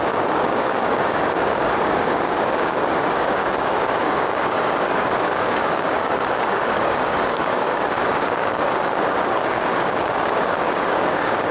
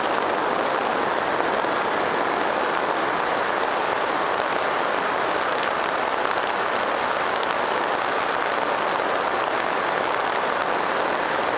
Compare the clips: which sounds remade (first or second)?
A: first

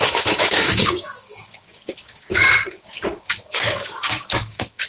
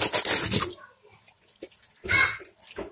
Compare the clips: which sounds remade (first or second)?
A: first